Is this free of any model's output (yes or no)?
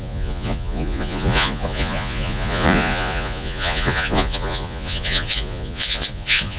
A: no